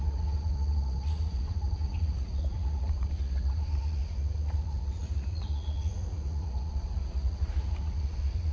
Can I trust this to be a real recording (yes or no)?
no